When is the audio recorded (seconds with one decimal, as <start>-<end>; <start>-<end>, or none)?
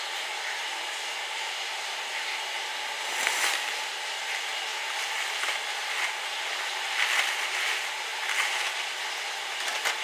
0.0-10.0